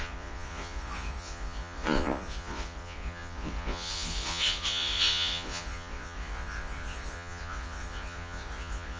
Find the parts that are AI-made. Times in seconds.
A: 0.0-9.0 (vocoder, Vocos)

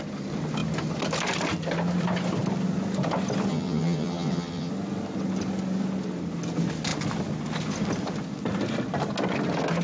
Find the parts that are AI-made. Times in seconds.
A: 3.5-4.7 (vocoder, HiFi-GAN)

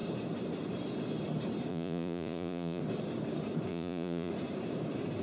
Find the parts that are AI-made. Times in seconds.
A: 1.7-2.8 (vocoder, Vocos); 3.7-4.3

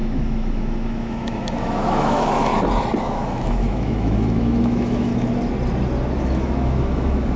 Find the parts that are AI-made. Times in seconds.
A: 0.0-2.5 (autoencoder, DAC-VAE); 3.0-5.1; 6.2-7.4

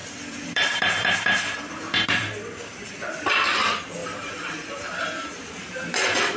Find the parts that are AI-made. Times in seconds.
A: 0.0-2.2 (vocoder, BigVGAN v2); 4.0-5.5